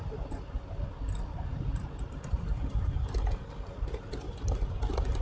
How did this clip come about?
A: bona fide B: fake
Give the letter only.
A